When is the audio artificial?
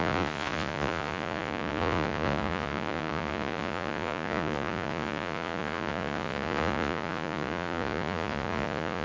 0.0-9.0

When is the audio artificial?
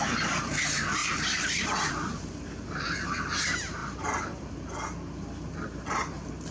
1.0-2.4; 3.8-4.5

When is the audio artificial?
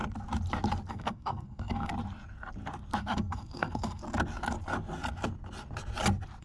0.9-1.9; 3.0-4.0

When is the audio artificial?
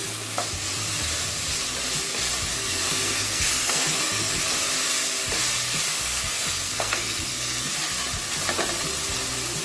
2.5-4.4; 5.9-7.7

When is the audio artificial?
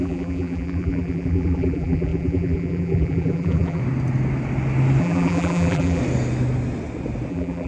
0.0-3.8; 5.0-6.0; 7.3-7.7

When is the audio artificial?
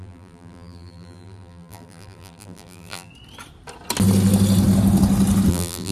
0.0-3.1; 5.5-5.9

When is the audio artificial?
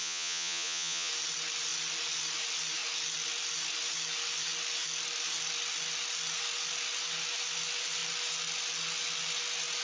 0.0-1.1